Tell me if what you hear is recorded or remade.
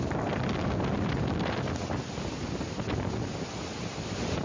recorded